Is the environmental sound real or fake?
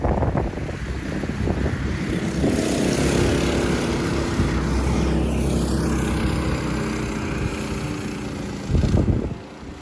real